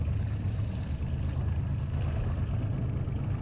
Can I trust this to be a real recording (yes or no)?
yes